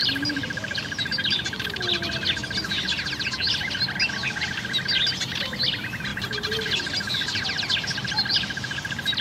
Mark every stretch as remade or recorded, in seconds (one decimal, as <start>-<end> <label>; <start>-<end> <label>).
0.0-1.9 remade; 1.9-5.2 recorded; 5.2-9.2 remade